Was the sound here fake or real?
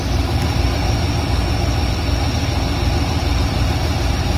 real